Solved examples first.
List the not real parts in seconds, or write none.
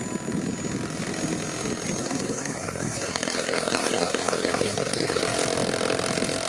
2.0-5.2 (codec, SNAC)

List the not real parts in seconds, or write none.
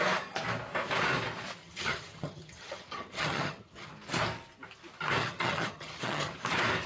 1.6-3.9 (vocoder, HiFi-GAN); 5.2-6.3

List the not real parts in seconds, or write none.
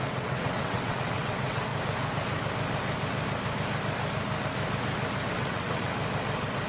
0.0-1.7 (vocoder, WaveNeXt); 5.3-5.9